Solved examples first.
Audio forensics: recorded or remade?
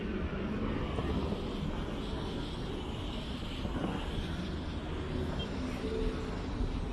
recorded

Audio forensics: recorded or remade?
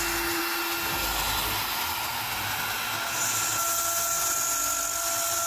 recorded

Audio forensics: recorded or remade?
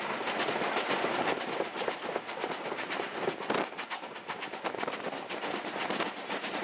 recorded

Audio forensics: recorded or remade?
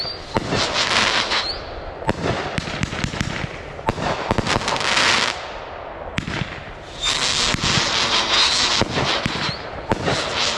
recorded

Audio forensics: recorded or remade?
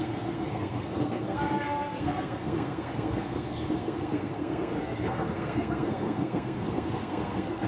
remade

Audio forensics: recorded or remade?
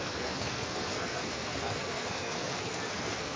remade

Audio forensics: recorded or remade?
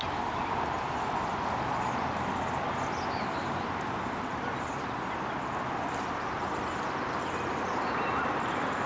recorded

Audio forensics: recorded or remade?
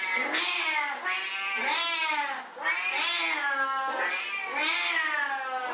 recorded